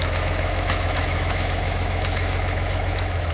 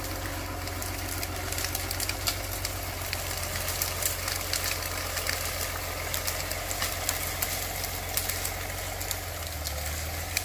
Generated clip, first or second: first